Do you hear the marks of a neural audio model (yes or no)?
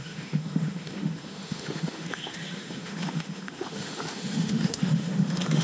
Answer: yes